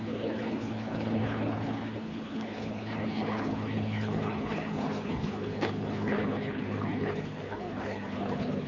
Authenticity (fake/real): fake